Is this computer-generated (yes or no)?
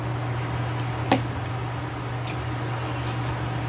no